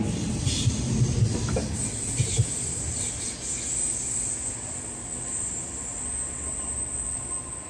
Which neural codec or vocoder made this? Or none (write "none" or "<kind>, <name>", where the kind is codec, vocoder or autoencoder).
none